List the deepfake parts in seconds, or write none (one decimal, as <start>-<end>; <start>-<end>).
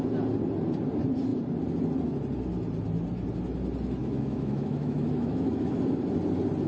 4.0-5.8